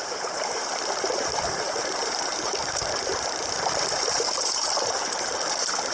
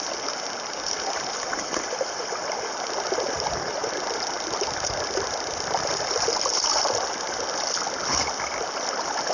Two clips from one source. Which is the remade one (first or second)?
first